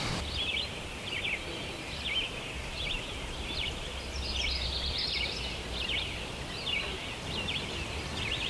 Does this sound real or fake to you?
real